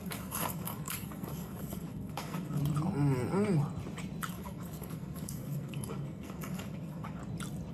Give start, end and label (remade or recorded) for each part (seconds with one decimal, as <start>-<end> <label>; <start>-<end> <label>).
0.0-2.6 remade; 2.6-4.3 recorded; 4.3-7.2 remade; 7.2-7.7 recorded